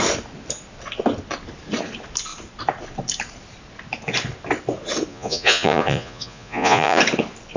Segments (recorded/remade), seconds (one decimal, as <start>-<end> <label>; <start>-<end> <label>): 0.0-5.1 recorded; 5.1-7.0 remade; 7.0-7.6 recorded